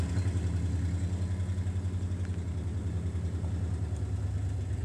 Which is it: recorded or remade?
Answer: recorded